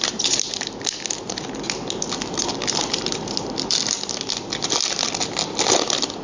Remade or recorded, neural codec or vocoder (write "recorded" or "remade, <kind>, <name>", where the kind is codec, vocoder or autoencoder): recorded